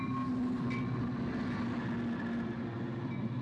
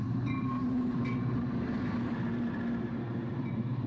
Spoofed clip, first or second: second